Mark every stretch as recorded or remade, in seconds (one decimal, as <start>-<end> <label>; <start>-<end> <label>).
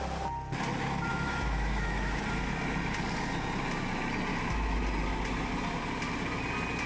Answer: 0.0-1.1 recorded; 1.1-2.2 remade; 2.2-4.3 recorded; 4.3-4.8 remade; 4.8-6.9 recorded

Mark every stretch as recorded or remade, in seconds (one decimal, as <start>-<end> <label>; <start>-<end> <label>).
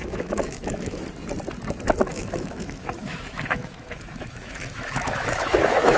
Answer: 0.0-1.0 remade; 1.0-2.1 recorded; 2.1-6.0 remade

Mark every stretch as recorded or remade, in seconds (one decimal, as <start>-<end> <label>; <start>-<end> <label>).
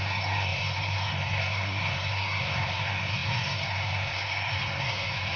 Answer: 0.0-5.4 remade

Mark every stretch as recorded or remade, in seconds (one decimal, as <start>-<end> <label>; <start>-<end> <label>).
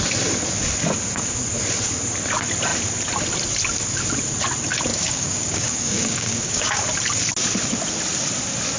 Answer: 0.0-4.9 recorded; 4.9-6.8 remade; 6.8-8.8 recorded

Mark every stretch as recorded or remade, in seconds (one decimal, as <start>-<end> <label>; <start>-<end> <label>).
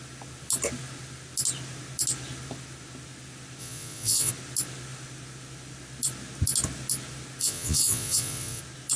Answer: 0.0-3.6 recorded; 3.6-4.3 remade; 4.3-7.4 recorded; 7.4-8.6 remade; 8.6-9.0 recorded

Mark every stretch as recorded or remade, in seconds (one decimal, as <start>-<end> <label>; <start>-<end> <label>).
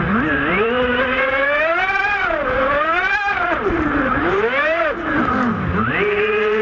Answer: 0.0-1.7 recorded; 1.7-5.7 remade; 5.7-6.6 recorded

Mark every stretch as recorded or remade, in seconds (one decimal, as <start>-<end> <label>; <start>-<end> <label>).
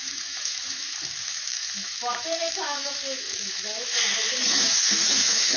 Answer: 0.0-5.6 remade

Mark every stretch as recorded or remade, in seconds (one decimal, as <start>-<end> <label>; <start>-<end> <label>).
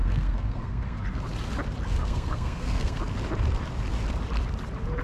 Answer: 0.0-1.0 remade; 1.0-2.0 recorded; 2.0-3.0 remade; 3.0-5.0 recorded